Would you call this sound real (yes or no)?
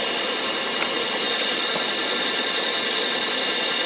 yes